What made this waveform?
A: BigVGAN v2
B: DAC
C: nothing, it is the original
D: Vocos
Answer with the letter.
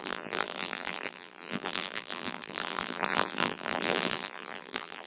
A